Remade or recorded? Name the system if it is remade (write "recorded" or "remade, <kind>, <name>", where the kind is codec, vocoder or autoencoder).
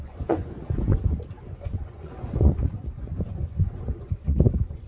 remade, vocoder, Vocos